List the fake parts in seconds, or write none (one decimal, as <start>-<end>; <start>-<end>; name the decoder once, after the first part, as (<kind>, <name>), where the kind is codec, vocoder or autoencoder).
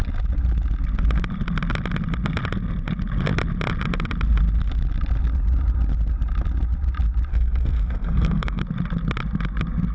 7.3-8.6 (codec, SNAC)